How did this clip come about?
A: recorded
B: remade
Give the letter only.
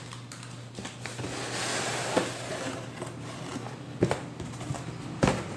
A